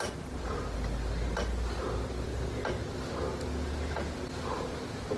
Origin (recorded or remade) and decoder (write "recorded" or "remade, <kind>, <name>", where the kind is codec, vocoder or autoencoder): recorded